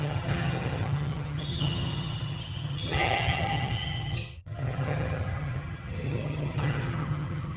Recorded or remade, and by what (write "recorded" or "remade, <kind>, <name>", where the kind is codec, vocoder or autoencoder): remade, vocoder, HiFi-GAN